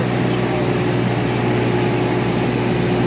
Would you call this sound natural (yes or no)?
yes